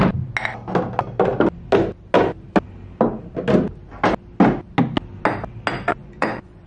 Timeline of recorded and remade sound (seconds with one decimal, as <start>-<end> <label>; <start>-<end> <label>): 0.0-5.9 recorded; 5.9-6.7 remade